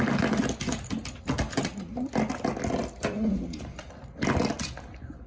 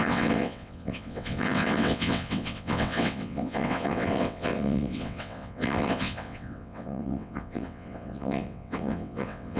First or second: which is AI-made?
second